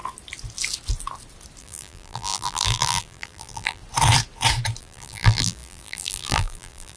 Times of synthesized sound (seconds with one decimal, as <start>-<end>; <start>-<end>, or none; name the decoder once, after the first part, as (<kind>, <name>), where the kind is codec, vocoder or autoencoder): 1.6-3.8 (vocoder, BigVGAN v2); 4.8-7.0